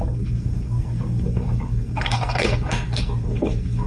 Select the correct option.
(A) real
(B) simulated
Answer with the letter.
B